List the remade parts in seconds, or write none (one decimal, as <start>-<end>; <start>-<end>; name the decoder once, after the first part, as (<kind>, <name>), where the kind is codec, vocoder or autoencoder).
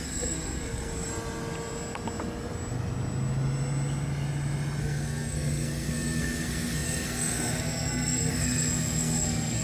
0.0-1.1 (codec, SNAC); 4.8-9.6